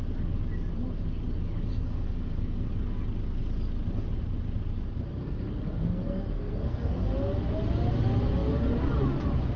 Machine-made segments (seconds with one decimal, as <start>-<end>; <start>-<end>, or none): 1.7-2.7; 5.2-7.0